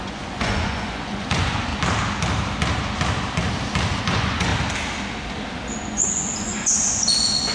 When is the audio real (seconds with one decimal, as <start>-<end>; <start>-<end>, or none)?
1.7-4.0; 4.5-5.8